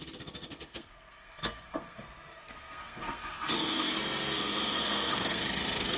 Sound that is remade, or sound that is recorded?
remade